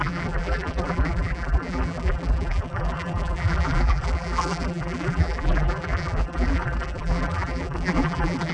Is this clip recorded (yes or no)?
no